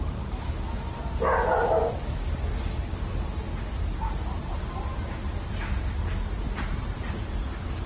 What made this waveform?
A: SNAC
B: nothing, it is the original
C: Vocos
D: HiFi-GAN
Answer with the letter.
B